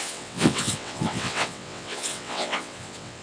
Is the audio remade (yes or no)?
yes